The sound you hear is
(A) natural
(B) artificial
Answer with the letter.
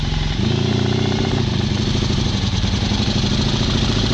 B